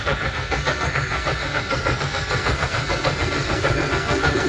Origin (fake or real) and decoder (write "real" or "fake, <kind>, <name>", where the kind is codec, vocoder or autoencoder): fake, codec, SNAC